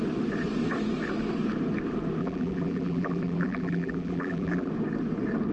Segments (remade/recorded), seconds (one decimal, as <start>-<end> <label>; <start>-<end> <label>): 0.0-2.2 recorded; 2.2-4.7 remade; 4.7-5.5 recorded